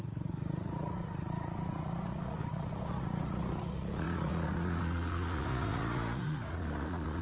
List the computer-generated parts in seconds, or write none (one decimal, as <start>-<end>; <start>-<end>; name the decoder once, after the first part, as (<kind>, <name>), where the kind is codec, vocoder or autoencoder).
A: 0.0-7.2 (vocoder, Vocos)